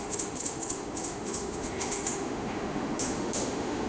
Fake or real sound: fake